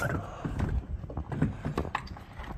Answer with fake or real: real